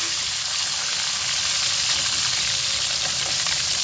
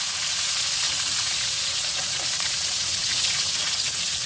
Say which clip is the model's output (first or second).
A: second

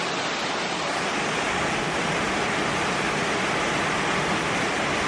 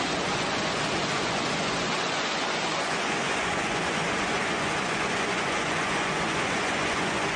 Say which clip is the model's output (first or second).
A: second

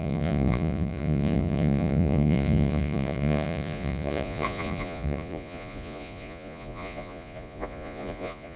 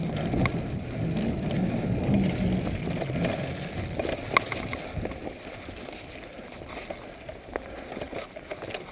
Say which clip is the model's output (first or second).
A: first